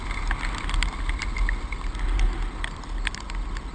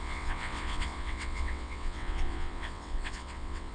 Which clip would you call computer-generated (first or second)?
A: second